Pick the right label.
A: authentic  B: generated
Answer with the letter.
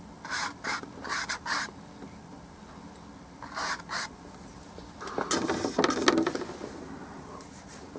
A